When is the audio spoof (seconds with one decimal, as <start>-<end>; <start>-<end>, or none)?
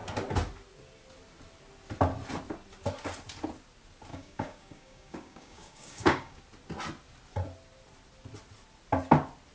4.1-6.4